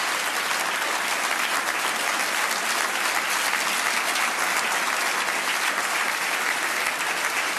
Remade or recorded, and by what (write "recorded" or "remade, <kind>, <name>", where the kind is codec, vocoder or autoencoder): recorded